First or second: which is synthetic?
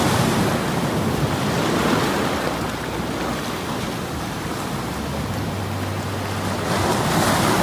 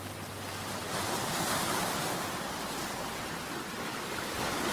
second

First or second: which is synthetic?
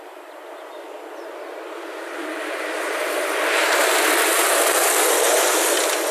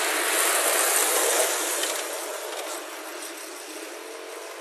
first